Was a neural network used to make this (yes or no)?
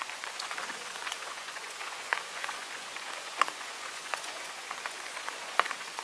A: yes